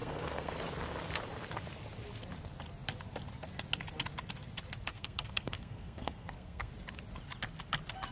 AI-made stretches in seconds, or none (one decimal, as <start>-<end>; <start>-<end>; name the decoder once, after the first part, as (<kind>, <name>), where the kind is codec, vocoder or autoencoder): 0.0-0.5 (codec, SNAC); 4.9-6.7